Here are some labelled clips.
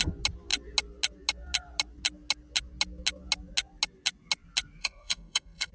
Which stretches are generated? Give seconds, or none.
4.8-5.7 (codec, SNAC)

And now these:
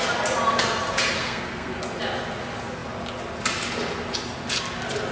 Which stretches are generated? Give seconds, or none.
1.2-1.8 (codec, SNAC)

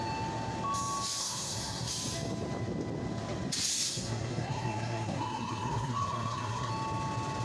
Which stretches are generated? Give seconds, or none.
1.2-1.9 (codec, SNAC); 3.7-6.7

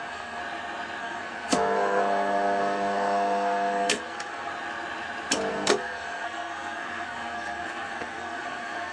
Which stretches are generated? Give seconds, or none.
0.0-0.4 (codec, SNAC); 1.0-4.5; 5.5-8.9

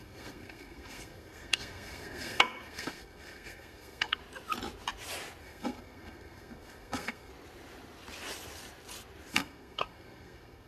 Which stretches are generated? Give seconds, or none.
0.0-4.2 (codec, SNAC); 5.4-7.3; 9.3-10.7